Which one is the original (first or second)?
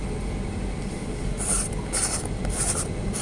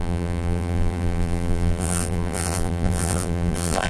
first